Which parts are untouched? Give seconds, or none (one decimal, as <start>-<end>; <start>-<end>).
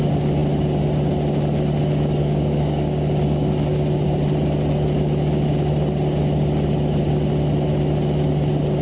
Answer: 0.0-2.2; 3.5-8.8